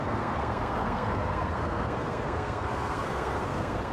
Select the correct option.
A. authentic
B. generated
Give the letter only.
B